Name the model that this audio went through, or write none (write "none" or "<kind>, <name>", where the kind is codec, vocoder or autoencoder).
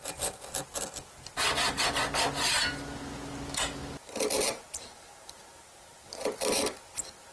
none